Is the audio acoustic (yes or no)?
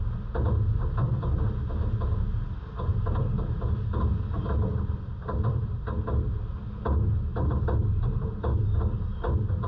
yes